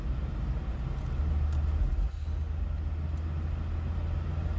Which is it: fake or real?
real